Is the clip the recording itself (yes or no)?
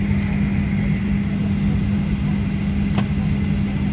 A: yes